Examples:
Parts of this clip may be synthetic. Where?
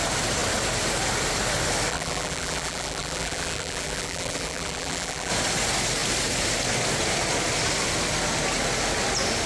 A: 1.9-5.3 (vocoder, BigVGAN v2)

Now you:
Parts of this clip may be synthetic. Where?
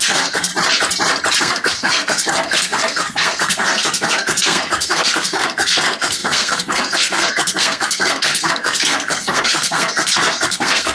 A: 0.0-0.5 (codec, SNAC); 1.4-10.9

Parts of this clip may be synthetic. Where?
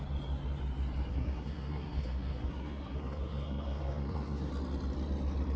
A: 1.1-4.5 (codec, SNAC)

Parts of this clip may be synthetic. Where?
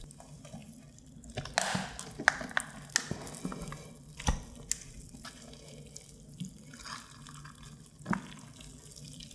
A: none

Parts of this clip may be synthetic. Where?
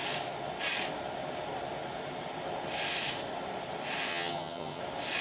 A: 4.1-4.8 (vocoder, HiFi-GAN)